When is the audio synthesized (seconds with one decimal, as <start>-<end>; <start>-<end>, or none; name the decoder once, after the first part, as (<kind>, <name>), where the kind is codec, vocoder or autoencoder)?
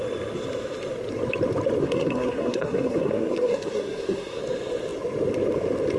1.8-4.4 (codec, SNAC)